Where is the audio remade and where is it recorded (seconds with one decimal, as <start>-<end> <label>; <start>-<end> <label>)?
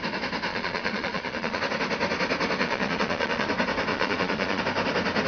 0.0-0.5 recorded; 0.5-1.6 remade; 1.6-2.6 recorded; 2.6-3.5 remade; 3.5-3.9 recorded; 3.9-4.6 remade; 4.6-5.3 recorded